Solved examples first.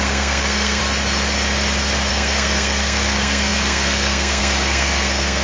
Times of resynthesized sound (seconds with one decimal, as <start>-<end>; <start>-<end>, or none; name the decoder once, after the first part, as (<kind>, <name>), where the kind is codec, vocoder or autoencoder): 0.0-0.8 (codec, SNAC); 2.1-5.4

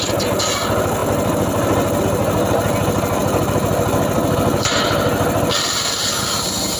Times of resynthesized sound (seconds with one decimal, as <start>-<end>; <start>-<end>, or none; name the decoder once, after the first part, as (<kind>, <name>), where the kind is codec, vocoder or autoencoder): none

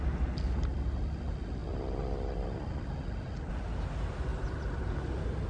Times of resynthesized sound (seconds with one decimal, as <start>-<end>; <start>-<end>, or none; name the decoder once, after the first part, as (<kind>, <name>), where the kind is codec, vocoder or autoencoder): none

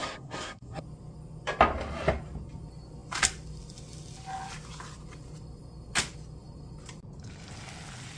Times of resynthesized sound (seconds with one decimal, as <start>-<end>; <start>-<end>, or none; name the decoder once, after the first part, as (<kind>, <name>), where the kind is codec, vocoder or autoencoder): 0.0-0.8 (codec, SNAC)

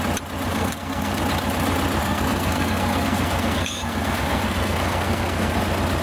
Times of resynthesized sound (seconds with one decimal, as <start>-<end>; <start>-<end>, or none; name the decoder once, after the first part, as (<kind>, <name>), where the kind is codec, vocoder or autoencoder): 0.5-1.2 (codec, SNAC); 2.0-5.6